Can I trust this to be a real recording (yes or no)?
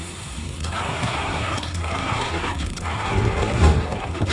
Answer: no